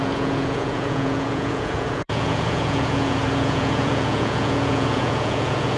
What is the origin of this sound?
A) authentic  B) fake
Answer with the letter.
B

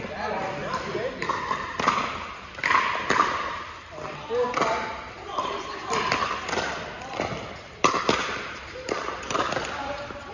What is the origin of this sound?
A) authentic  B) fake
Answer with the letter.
A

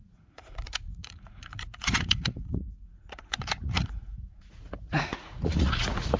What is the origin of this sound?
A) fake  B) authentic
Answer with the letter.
A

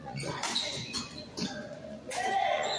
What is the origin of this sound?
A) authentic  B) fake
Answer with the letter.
B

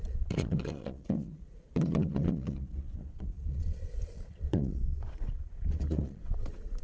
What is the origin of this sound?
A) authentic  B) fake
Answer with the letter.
B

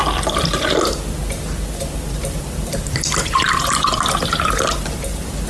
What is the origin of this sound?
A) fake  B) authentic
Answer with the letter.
B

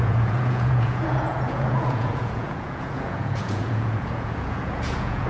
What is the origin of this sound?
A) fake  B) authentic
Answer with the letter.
A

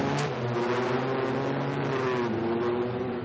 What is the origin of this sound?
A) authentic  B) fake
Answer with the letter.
A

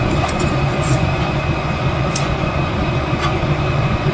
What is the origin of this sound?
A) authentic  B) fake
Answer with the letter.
B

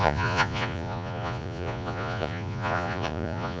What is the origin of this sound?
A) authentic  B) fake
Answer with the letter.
B